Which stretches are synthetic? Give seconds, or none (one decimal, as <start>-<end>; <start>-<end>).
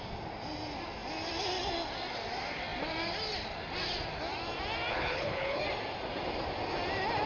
4.9-5.6